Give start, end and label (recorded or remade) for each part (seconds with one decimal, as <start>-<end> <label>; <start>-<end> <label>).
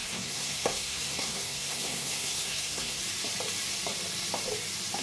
0.0-3.0 remade; 3.0-5.0 recorded